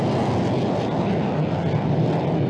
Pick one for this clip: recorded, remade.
recorded